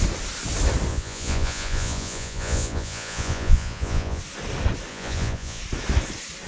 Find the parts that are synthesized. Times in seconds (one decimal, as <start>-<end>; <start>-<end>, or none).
0.9-4.2; 4.9-5.6